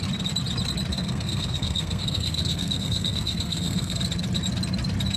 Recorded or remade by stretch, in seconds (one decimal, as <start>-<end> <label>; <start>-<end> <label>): 0.0-0.9 recorded; 0.9-4.0 remade; 4.0-5.2 recorded